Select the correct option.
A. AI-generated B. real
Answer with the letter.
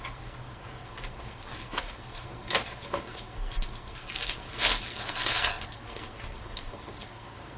A